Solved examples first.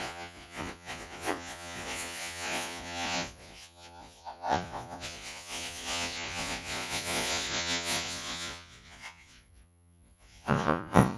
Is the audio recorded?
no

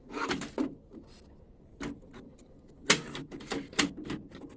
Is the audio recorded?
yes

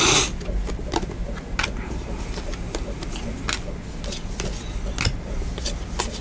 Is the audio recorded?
yes